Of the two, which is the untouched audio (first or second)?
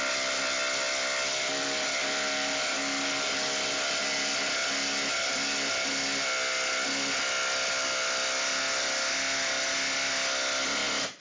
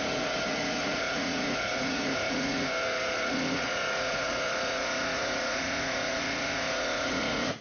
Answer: first